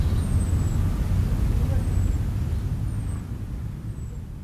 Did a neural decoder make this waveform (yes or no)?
no